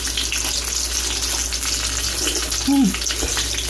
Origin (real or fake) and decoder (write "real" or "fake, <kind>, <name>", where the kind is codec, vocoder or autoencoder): real